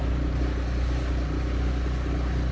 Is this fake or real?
real